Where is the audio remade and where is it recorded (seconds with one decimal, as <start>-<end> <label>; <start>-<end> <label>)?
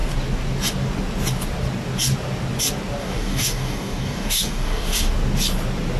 0.0-3.0 recorded; 3.0-5.1 remade; 5.1-6.0 recorded